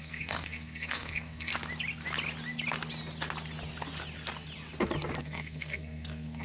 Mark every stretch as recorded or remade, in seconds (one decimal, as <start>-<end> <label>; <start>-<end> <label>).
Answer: 0.0-1.5 remade; 1.5-5.2 recorded; 5.2-6.4 remade